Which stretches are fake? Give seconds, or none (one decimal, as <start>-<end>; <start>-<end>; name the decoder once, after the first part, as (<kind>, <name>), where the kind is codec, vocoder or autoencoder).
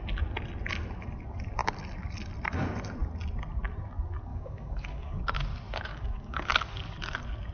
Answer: 4.3-5.2 (codec, DAC); 5.9-6.5